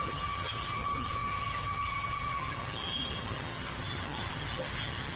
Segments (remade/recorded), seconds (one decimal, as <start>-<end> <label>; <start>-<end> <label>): 0.0-5.2 remade